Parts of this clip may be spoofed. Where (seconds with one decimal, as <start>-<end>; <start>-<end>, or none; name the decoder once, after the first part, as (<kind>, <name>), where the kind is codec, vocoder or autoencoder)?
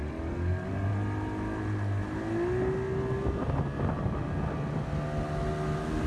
none